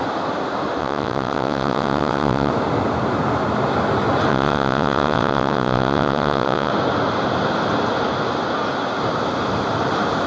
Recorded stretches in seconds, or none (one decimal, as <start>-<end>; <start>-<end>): 0.0-0.8; 2.5-4.3; 6.7-10.3